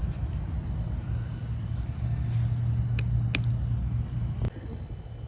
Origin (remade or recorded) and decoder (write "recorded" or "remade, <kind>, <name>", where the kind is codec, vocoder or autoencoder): recorded